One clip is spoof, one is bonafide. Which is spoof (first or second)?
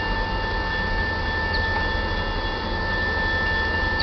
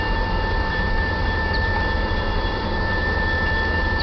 second